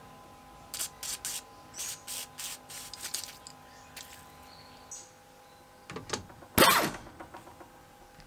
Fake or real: real